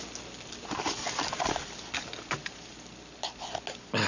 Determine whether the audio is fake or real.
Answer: real